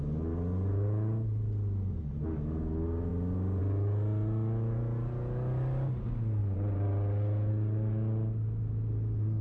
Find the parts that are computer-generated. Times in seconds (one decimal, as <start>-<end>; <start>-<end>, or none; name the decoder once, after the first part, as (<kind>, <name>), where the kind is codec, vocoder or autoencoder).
none